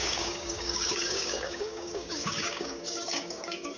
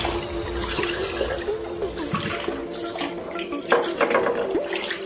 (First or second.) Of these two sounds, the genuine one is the second